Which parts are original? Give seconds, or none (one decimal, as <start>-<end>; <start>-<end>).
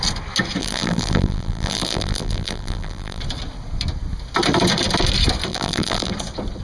0.0-0.6; 3.2-5.5; 6.1-6.6